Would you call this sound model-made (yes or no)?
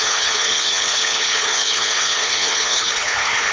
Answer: yes